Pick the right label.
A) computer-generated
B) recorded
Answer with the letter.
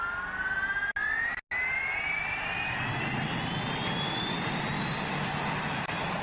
B